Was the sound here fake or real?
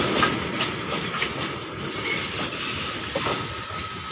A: real